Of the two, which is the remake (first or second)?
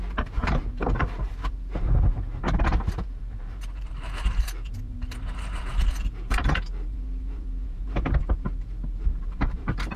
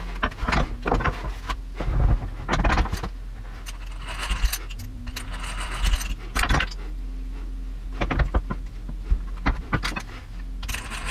first